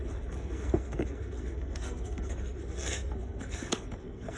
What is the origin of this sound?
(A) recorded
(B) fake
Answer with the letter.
B